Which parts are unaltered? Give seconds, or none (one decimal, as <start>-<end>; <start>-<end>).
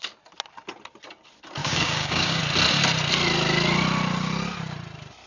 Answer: 0.0-1.6; 2.4-5.3